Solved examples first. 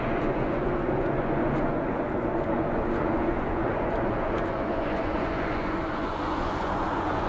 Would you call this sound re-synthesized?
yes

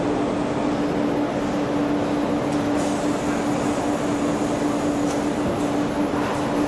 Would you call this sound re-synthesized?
no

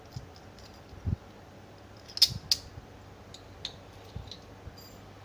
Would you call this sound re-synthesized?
no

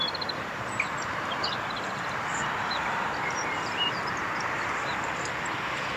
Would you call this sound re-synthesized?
yes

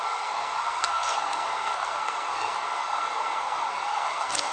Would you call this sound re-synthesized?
yes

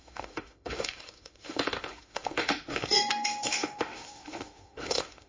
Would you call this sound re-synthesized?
yes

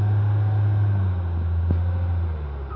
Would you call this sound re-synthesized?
no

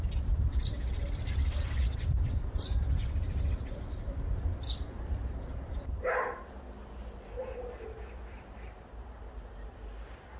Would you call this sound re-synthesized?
yes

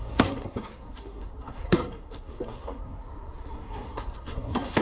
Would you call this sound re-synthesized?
yes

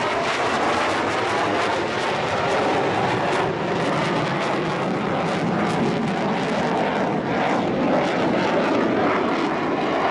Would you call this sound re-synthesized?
no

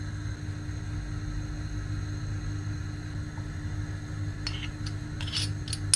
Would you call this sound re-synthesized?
no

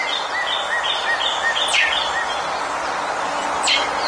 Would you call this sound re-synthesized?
no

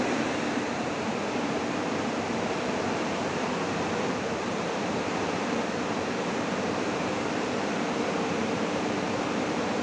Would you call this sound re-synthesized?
yes